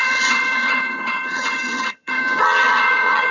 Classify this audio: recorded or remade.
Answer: remade